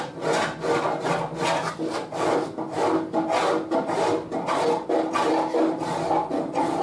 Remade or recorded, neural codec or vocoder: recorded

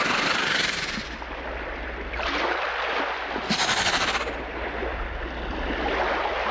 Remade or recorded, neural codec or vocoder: recorded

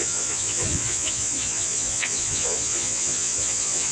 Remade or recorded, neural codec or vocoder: remade, vocoder, Vocos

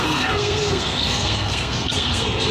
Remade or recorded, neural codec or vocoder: remade, codec, SNAC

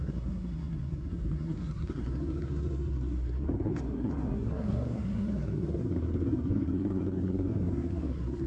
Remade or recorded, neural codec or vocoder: remade, codec, SNAC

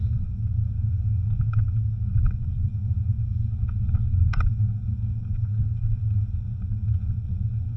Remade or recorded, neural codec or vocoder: remade, codec, SNAC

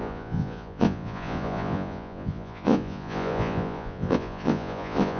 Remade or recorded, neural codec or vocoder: remade, vocoder, Vocos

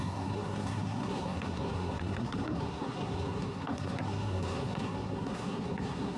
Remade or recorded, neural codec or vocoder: remade, codec, SNAC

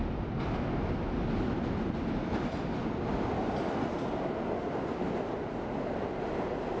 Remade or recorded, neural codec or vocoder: recorded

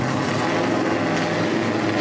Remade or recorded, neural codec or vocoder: recorded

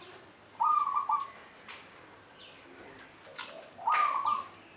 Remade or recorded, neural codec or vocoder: recorded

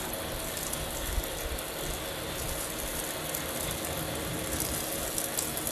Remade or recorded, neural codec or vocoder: recorded